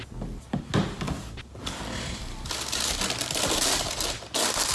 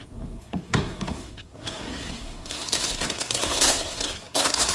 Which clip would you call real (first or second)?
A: first